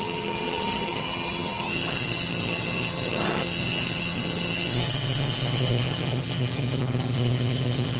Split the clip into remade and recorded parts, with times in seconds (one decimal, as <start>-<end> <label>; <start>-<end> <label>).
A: 0.0-8.0 remade